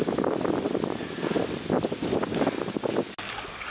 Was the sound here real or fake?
real